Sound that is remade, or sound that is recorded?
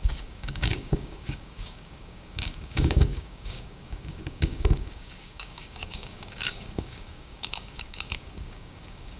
remade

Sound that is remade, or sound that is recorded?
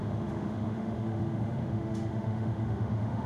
remade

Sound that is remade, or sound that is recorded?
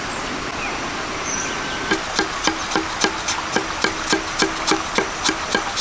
recorded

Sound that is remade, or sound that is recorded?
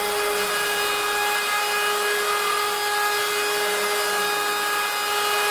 recorded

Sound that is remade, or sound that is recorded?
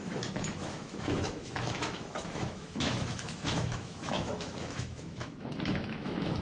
remade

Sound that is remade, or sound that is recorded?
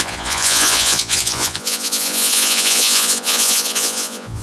remade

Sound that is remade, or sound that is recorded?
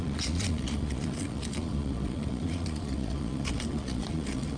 remade